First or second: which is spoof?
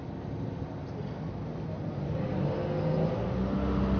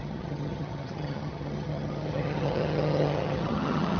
second